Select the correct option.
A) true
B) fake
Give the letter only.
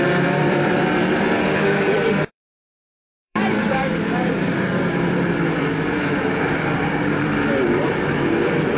B